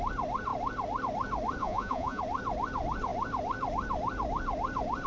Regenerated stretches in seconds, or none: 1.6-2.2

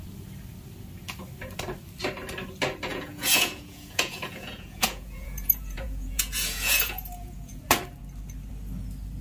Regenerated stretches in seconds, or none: 2.9-7.6